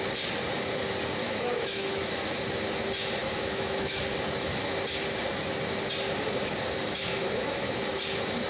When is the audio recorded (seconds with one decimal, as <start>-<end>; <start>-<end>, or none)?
0.0-1.2; 2.1-3.2; 4.0-7.1; 7.8-8.5